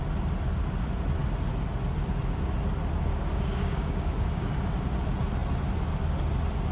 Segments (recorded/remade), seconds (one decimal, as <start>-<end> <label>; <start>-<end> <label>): 0.0-3.1 recorded; 3.1-4.7 remade; 4.7-6.7 recorded